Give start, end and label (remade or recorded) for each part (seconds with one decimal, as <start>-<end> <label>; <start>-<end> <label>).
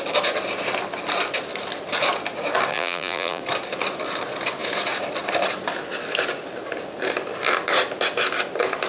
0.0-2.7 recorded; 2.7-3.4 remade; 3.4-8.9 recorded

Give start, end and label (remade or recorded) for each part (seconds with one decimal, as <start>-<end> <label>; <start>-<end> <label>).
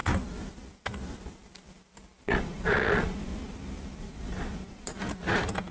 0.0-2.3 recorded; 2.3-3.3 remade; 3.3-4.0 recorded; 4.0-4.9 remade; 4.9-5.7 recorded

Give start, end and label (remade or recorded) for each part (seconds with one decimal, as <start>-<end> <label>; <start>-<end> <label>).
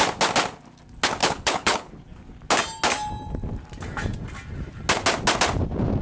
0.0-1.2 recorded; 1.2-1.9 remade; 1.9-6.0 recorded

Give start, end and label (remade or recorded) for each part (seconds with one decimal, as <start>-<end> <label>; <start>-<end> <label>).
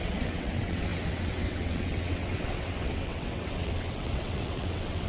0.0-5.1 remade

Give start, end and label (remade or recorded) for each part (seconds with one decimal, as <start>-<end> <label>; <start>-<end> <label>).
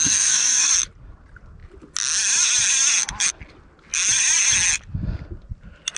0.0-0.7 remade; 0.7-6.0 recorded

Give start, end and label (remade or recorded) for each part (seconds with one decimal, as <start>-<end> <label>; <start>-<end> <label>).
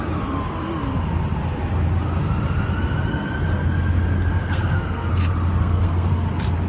0.0-4.4 recorded; 4.4-5.1 remade; 5.1-5.6 recorded; 5.6-6.1 remade; 6.1-6.7 recorded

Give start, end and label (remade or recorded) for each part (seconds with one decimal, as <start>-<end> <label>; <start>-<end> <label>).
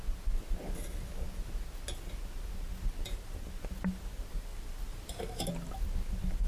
0.0-4.5 recorded; 4.5-5.5 remade; 5.5-6.5 recorded